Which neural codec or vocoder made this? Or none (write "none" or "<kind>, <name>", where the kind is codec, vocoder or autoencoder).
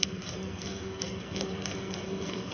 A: codec, SNAC